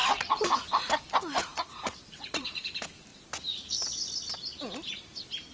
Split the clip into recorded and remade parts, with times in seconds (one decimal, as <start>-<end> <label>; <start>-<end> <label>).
0.0-0.9 remade; 0.9-1.4 recorded; 1.4-2.6 remade; 2.6-5.5 recorded